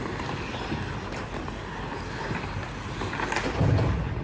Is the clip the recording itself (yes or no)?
yes